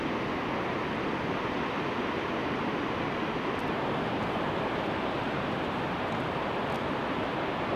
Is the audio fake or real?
real